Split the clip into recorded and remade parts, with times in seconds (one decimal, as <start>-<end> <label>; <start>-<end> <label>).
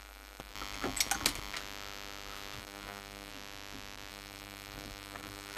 0.0-0.5 remade; 0.5-2.6 recorded; 2.6-3.3 remade; 3.3-4.1 recorded; 4.1-5.6 remade